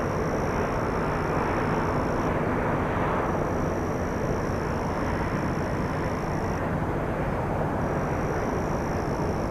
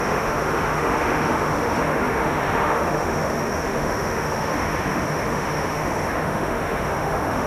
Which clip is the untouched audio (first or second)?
first